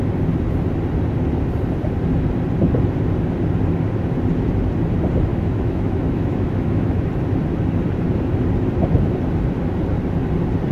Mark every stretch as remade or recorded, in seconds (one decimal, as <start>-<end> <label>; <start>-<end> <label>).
0.0-5.3 recorded; 5.3-7.0 remade; 7.0-10.7 recorded